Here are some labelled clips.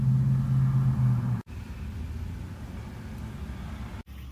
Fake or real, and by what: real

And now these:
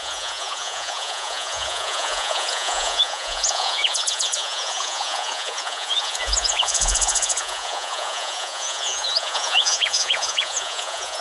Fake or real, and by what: fake, vocoder, Vocos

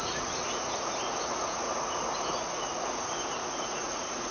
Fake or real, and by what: fake, vocoder, Vocos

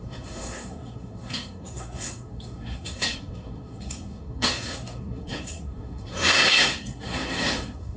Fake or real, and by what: fake, codec, SNAC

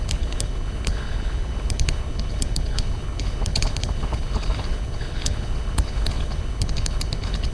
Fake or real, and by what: fake, codec, HILCodec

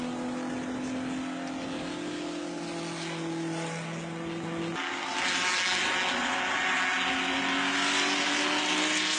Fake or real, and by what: real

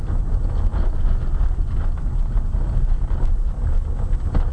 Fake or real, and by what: real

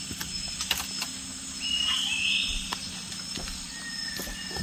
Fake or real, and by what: real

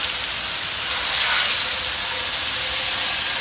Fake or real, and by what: real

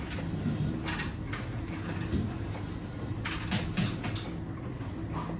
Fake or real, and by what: real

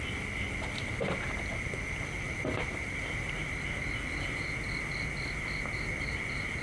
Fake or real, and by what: real